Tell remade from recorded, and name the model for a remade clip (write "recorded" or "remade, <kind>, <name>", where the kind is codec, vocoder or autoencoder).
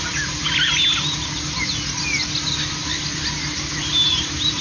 recorded